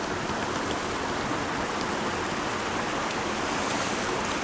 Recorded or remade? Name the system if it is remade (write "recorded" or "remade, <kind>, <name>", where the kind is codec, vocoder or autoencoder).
recorded